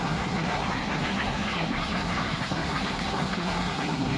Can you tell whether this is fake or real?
fake